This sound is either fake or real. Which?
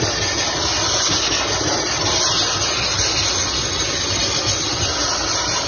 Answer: real